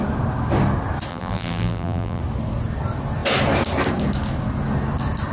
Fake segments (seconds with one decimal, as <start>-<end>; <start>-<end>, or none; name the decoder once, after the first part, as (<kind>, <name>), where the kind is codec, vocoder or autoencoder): 1.1-2.2 (vocoder, BigVGAN v2)